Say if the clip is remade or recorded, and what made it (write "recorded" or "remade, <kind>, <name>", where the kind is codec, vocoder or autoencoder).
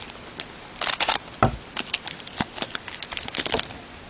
recorded